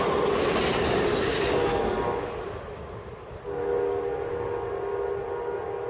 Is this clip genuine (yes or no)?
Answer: yes